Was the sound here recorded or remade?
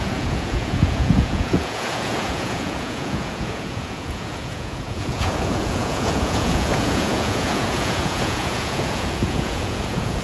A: remade